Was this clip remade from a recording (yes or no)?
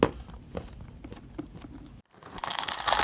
no